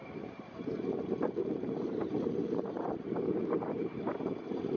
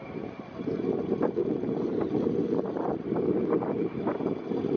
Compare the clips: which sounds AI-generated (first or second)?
first